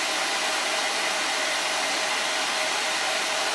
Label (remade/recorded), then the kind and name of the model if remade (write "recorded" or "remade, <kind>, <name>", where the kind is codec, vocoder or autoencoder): recorded